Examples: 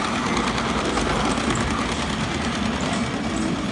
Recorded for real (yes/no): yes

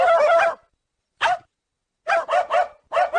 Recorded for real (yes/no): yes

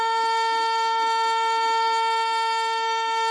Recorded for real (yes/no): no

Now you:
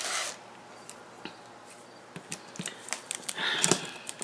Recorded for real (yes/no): yes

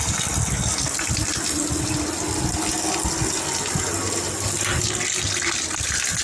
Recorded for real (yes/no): yes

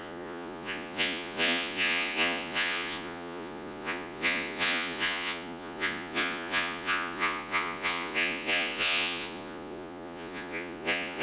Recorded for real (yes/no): no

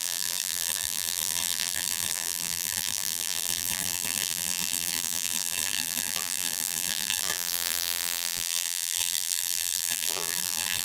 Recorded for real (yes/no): no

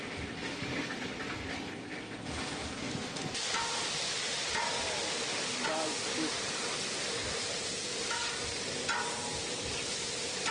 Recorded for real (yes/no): yes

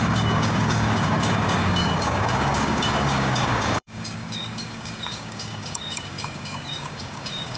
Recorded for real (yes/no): no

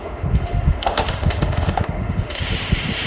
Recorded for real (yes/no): no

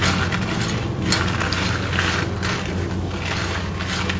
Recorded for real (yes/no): yes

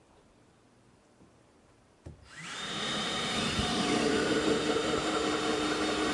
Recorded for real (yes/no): no